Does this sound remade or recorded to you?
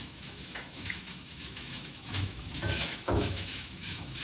remade